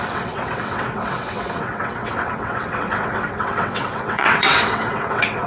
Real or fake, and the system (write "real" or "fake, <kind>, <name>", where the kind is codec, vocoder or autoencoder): fake, vocoder, WaveNeXt